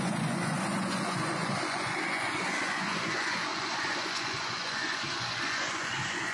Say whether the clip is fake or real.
fake